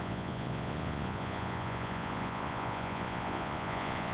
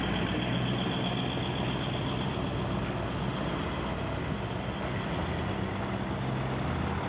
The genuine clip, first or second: second